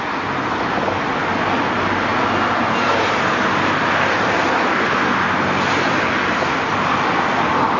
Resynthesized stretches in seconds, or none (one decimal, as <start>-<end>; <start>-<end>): none